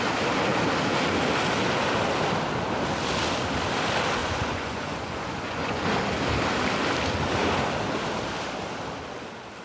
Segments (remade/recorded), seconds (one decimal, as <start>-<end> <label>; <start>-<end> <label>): 0.0-4.2 recorded; 4.2-5.8 remade; 5.8-9.6 recorded